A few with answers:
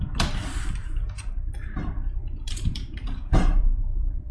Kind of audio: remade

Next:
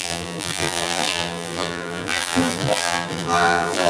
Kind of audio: remade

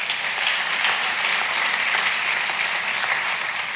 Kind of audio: remade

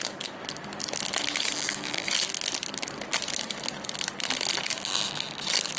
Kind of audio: recorded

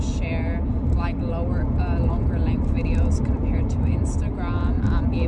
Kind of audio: recorded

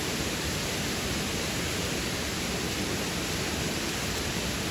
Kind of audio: recorded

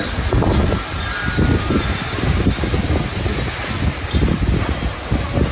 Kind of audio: recorded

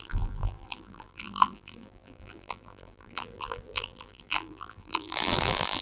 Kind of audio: remade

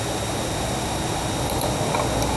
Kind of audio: recorded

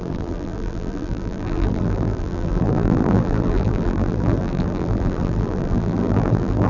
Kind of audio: remade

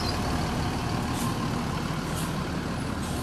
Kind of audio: recorded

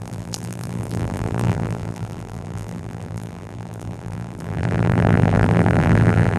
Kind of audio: remade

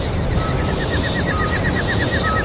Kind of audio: recorded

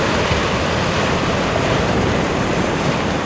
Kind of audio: remade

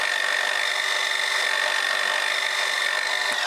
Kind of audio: recorded